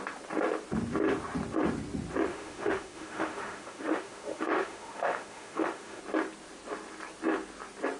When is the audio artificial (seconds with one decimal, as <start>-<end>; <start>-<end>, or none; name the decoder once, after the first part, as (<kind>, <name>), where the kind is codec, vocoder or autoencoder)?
2.3-6.0 (autoencoder, DAC-VAE)